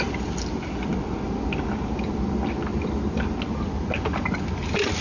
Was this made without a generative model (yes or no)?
yes